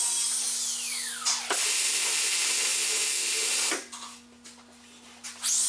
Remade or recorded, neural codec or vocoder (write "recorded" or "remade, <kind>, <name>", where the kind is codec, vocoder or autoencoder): recorded